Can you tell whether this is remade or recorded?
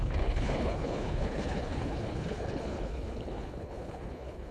remade